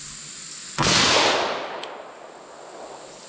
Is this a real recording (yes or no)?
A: yes